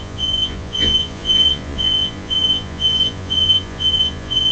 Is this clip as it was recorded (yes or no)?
no